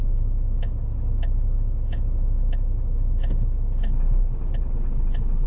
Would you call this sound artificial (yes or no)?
no